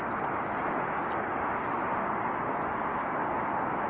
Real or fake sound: real